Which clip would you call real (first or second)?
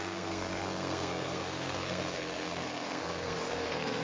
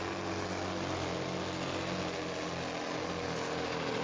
second